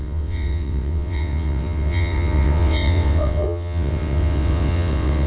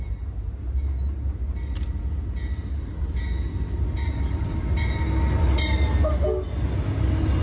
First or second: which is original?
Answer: second